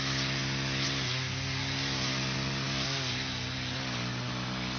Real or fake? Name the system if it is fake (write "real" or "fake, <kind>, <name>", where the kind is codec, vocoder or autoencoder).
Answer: real